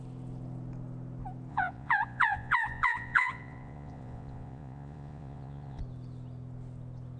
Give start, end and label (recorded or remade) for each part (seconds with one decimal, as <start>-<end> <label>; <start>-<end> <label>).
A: 0.0-1.5 recorded; 1.5-5.8 remade; 5.8-7.2 recorded

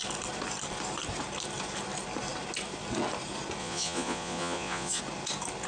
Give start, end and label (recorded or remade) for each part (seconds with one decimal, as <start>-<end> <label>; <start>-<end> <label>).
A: 0.0-3.6 recorded; 3.6-5.0 remade; 5.0-5.7 recorded

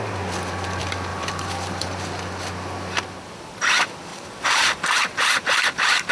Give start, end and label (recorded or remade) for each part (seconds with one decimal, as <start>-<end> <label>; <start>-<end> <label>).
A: 0.0-1.1 recorded; 1.1-1.9 remade; 1.9-4.1 recorded; 4.1-6.1 remade

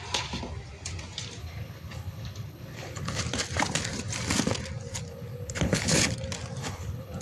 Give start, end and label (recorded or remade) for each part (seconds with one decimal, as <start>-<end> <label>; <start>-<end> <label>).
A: 0.0-1.4 recorded; 1.4-3.2 remade; 3.2-5.1 recorded; 5.1-6.1 remade; 6.1-6.6 recorded; 6.6-7.2 remade

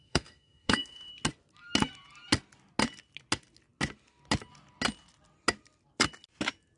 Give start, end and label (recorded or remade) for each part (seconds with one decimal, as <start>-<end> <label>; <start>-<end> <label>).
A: 0.0-1.1 remade; 1.1-6.8 recorded

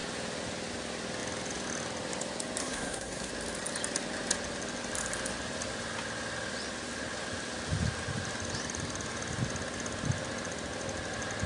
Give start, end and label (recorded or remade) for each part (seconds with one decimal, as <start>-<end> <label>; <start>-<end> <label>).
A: 0.0-2.6 recorded; 2.6-3.3 remade; 3.3-11.5 recorded

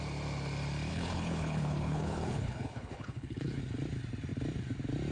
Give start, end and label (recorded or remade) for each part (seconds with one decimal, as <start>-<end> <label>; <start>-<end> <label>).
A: 0.0-0.9 recorded; 0.9-3.6 remade; 3.6-5.1 recorded